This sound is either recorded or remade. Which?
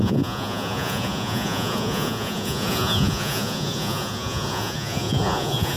remade